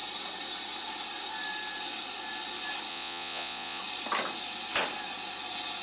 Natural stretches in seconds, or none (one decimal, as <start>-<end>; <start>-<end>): 0.0-2.9; 3.8-5.8